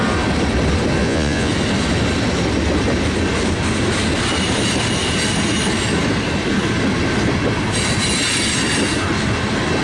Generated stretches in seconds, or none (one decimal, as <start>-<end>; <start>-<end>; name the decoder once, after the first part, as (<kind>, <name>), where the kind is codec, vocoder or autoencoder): 1.0-1.5 (vocoder, Vocos)